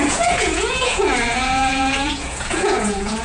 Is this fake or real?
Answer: fake